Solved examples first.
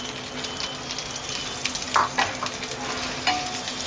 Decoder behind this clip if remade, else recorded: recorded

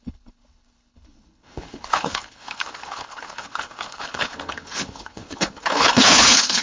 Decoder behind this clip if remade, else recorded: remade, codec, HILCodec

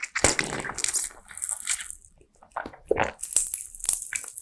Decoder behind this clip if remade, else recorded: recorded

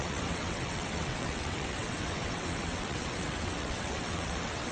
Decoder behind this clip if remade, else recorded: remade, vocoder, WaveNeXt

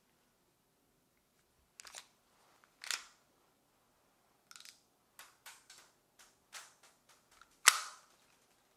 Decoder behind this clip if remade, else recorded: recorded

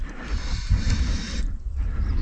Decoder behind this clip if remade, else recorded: recorded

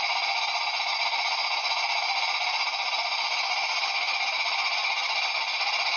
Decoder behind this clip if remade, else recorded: recorded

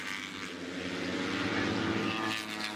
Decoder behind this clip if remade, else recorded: recorded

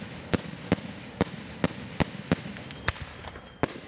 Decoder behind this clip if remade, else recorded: recorded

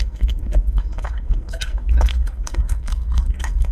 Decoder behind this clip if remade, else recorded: remade, codec, SNAC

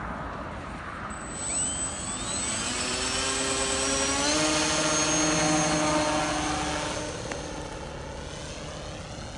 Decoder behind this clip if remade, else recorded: recorded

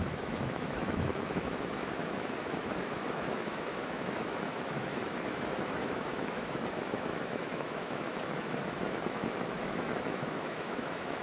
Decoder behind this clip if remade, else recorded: remade, autoencoder, DAC-VAE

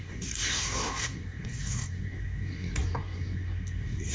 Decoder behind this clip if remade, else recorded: remade, codec, SNAC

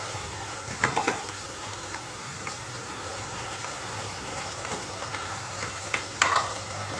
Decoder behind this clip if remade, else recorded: remade, codec, SNAC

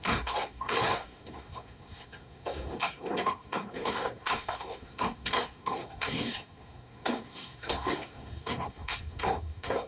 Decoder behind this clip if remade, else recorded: remade, codec, SNAC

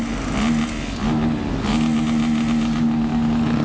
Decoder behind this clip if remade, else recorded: recorded